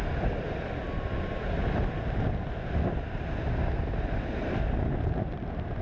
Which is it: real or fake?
real